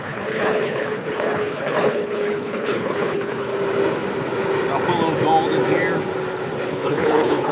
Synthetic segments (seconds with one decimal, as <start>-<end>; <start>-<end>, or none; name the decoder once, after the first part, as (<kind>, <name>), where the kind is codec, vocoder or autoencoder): 0.0-3.5 (codec, HILCodec); 6.7-7.5